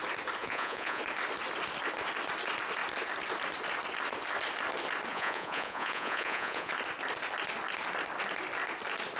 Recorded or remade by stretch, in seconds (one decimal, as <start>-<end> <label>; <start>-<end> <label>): 0.0-0.4 recorded; 0.4-1.0 remade; 1.0-5.1 recorded; 5.1-6.7 remade; 6.7-9.2 recorded